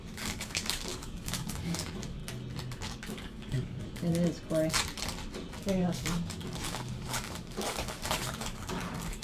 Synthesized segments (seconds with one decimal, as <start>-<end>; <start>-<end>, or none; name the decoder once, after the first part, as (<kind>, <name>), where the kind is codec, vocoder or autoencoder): 0.0-2.2 (codec, DAC); 2.8-4.1; 5.6-9.2